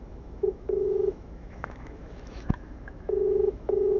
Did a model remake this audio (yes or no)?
yes